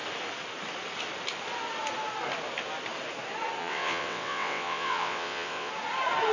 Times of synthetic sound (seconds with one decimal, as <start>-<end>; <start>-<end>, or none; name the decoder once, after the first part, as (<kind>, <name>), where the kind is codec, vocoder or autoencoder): 3.6-5.7 (vocoder, WaveNeXt)